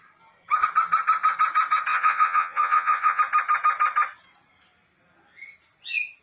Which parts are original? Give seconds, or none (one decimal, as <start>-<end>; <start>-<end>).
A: 0.0-1.9; 3.2-6.2